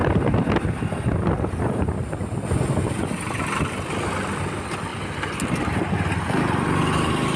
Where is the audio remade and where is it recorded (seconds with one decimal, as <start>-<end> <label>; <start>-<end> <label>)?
0.0-7.4 recorded